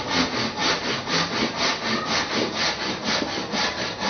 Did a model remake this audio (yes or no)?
no